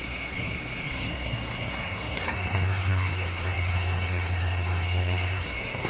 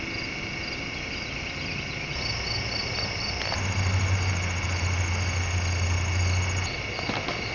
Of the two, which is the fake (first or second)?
first